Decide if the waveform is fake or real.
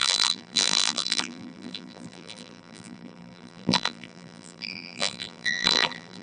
fake